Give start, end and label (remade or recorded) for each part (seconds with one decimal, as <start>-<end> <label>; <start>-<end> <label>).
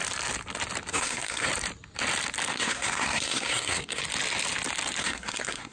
0.0-0.9 recorded; 0.9-1.5 remade; 1.5-2.5 recorded; 2.5-4.0 remade; 4.0-5.0 recorded; 5.0-5.7 remade